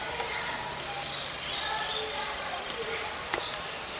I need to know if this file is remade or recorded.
remade